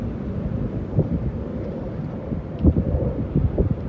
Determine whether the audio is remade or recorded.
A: recorded